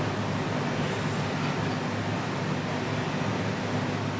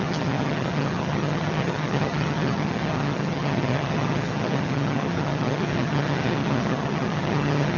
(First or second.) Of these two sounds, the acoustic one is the first